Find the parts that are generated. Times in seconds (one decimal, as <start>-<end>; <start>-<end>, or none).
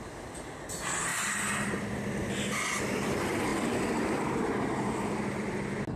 none